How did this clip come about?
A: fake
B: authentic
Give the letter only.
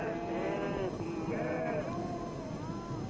B